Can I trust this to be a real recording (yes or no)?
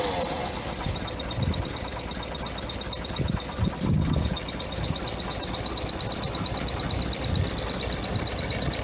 yes